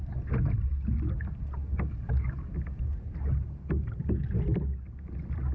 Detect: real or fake real